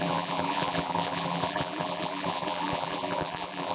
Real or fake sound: fake